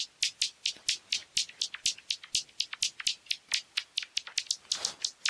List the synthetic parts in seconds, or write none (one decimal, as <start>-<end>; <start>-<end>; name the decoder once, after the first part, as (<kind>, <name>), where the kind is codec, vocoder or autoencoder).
none